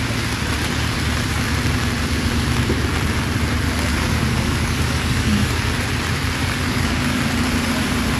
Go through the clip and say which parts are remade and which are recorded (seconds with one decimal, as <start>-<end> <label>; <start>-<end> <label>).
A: 0.0-3.9 recorded; 3.9-5.6 remade; 5.6-6.4 recorded; 6.4-7.2 remade; 7.2-8.2 recorded